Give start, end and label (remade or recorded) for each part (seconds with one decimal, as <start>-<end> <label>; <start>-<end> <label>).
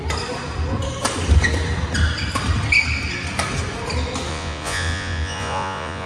0.0-4.3 recorded; 4.3-6.1 remade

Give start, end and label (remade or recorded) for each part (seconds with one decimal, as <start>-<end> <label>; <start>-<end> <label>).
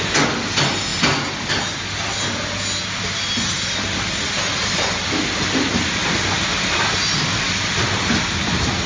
0.0-8.9 recorded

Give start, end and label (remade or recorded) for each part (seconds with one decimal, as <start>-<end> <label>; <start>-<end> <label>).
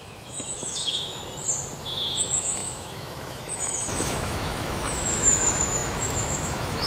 0.0-1.2 remade; 1.2-1.8 recorded; 1.8-6.9 remade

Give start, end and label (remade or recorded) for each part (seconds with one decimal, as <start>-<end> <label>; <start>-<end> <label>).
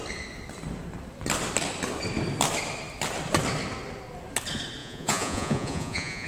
0.0-4.8 recorded; 4.8-6.3 remade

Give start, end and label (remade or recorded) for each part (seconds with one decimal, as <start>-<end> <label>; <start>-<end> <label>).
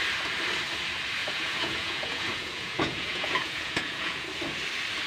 0.0-1.2 recorded; 1.2-4.3 remade; 4.3-5.1 recorded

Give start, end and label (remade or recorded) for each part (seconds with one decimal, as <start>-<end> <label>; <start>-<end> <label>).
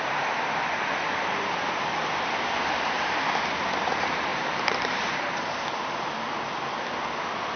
0.0-4.3 recorded; 4.3-5.6 remade; 5.6-7.6 recorded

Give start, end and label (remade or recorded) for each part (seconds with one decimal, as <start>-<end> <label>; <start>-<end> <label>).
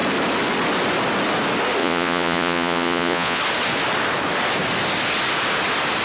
0.0-1.8 recorded; 1.8-3.4 remade; 3.4-6.0 recorded